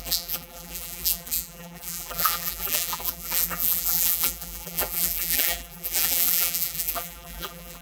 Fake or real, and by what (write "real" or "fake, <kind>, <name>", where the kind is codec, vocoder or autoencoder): fake, vocoder, BigVGAN v2